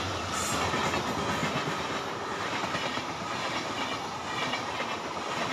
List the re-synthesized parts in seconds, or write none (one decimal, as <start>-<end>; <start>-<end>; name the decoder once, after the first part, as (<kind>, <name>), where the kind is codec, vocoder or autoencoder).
1.4-3.8 (vocoder, BigVGAN v2)